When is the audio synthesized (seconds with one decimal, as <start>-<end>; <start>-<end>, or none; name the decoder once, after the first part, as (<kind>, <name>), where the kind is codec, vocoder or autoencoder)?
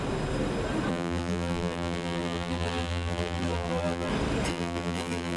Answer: 0.9-4.1 (vocoder, BigVGAN v2); 4.5-5.4